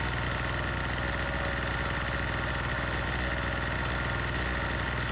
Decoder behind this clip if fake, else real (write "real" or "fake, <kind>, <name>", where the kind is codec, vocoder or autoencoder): real